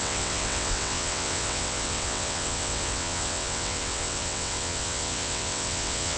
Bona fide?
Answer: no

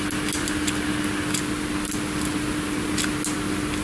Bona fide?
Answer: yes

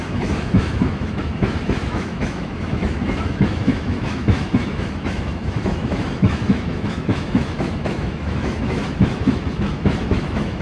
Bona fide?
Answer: no